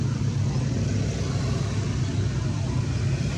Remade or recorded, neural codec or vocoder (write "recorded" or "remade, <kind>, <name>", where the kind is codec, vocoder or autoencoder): recorded